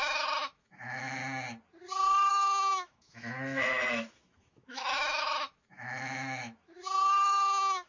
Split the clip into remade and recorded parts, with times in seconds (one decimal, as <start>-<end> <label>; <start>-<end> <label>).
0.0-1.2 remade; 1.2-2.3 recorded; 2.3-7.9 remade